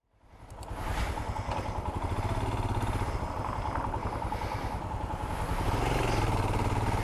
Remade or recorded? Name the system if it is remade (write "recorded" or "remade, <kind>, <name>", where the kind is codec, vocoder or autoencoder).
recorded